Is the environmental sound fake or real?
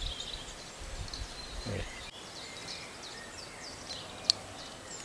real